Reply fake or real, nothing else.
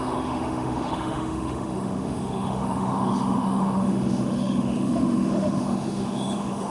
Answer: fake